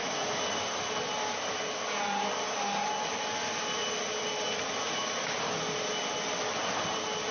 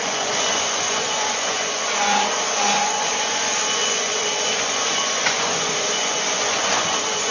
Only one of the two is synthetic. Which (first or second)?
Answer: second